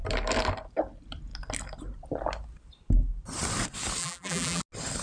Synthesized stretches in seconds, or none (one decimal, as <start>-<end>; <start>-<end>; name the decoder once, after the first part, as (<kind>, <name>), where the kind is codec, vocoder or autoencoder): 4.0-4.6 (vocoder, BigVGAN v2)